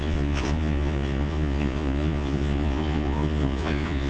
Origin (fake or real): fake